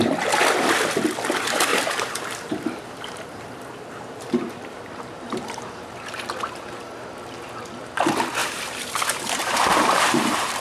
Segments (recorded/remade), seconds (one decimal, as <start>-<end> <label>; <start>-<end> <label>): 0.0-1.7 recorded; 1.7-6.4 remade; 6.4-8.4 recorded; 8.4-10.6 remade